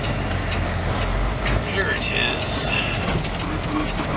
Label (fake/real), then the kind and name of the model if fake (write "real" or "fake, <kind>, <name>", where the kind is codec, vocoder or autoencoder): real